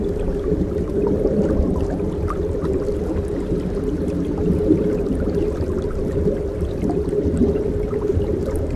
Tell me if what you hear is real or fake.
real